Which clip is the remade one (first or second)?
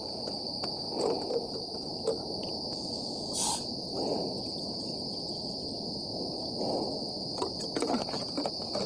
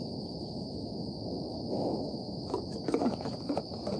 second